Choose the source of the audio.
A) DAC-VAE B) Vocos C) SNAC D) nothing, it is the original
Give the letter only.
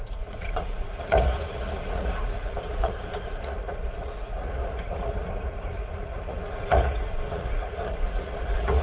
B